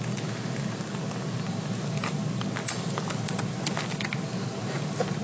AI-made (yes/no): no